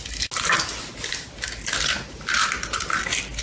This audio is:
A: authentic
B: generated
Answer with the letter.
A